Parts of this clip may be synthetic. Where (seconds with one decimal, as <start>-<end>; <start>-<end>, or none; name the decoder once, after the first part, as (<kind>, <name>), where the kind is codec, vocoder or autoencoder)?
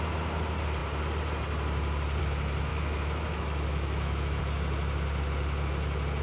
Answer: 2.7-4.4 (autoencoder, DAC-VAE)